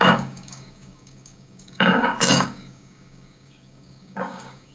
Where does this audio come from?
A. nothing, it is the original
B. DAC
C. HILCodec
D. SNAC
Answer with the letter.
B